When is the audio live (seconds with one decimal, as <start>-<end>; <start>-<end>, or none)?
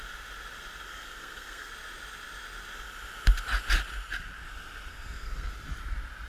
0.0-0.9; 1.7-4.9; 5.5-6.3